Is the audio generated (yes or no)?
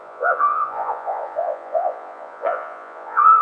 yes